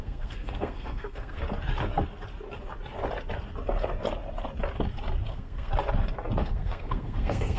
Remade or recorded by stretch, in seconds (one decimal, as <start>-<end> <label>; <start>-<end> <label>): 0.0-1.4 remade; 1.4-5.3 recorded; 5.3-5.7 remade; 5.7-6.4 recorded; 6.4-7.6 remade